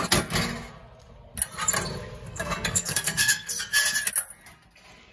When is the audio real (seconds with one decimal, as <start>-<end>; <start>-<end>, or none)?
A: 0.0-2.3; 3.5-5.1